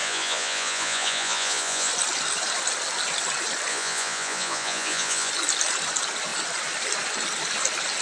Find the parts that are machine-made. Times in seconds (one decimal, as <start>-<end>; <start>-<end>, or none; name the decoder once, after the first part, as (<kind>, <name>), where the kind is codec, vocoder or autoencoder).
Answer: 0.0-1.9 (vocoder, Vocos); 3.7-5.3